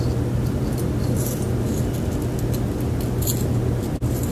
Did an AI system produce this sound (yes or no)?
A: no